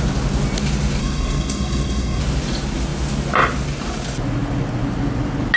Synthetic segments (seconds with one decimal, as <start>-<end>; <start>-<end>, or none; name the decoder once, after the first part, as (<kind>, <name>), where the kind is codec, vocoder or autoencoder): 1.0-2.2 (codec, SNAC)